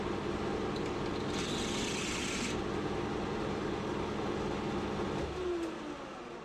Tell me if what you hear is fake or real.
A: real